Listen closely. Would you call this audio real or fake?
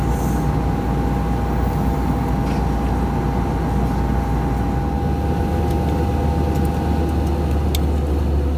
real